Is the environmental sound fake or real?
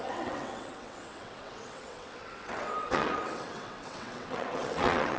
fake